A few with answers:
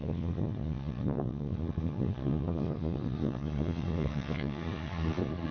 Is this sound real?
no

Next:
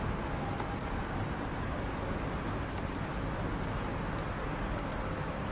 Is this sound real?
yes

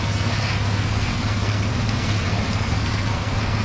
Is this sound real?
no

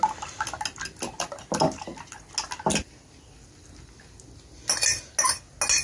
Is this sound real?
yes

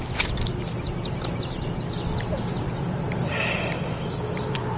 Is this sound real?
yes